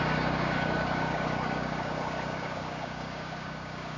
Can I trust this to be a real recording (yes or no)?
no